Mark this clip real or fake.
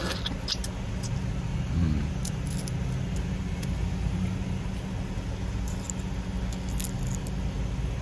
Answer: real